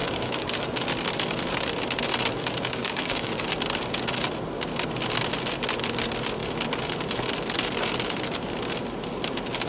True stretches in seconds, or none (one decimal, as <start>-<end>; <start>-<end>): 0.6-2.8; 3.4-9.7